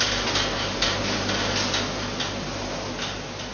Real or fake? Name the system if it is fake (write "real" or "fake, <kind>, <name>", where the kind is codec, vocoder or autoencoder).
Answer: real